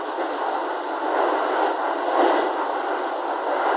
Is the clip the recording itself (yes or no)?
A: yes